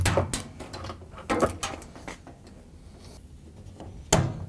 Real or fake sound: real